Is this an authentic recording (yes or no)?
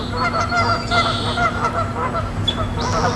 yes